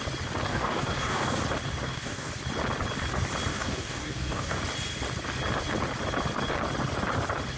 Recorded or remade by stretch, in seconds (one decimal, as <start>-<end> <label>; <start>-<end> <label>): 0.0-0.5 recorded; 0.5-1.4 remade; 1.4-1.8 recorded; 1.8-2.3 remade; 2.3-3.5 recorded; 3.5-4.6 remade; 4.6-7.6 recorded